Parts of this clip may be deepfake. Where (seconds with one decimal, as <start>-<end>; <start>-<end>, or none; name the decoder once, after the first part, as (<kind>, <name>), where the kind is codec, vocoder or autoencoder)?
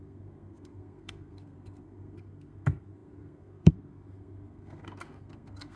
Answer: 0.0-5.8 (codec, SNAC)